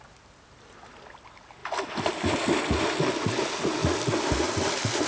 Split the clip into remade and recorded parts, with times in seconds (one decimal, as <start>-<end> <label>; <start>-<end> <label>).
0.0-5.1 recorded